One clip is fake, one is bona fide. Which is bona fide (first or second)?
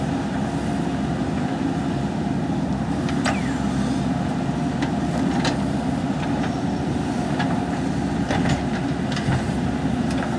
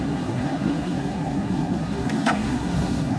first